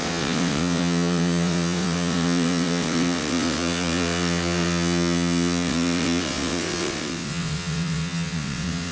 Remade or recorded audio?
remade